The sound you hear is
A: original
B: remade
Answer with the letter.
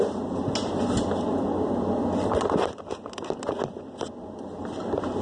A